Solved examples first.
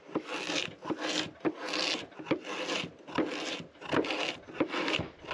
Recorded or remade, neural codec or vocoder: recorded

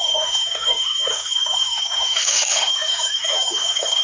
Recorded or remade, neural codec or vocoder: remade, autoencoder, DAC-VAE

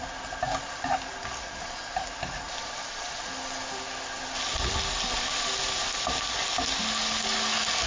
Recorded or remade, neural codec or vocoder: recorded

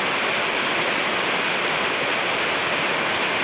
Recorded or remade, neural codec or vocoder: recorded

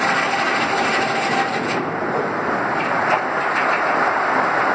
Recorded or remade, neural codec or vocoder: recorded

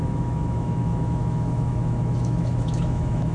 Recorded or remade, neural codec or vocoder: remade, autoencoder, DAC-VAE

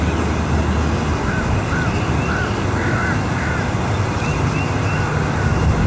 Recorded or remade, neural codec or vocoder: recorded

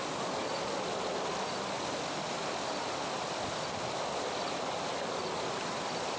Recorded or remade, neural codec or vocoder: recorded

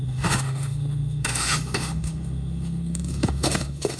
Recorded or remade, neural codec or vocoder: remade, autoencoder, DAC-VAE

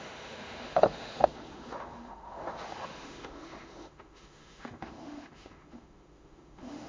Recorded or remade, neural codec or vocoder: remade, autoencoder, DAC-VAE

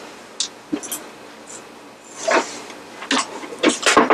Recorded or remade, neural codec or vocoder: recorded